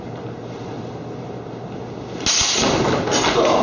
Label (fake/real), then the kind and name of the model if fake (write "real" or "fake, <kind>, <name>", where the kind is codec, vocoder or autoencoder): real